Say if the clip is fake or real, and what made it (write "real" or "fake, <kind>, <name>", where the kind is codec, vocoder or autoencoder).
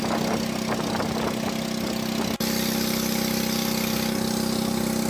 real